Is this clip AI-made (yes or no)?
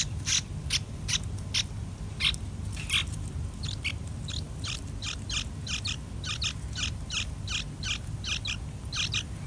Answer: no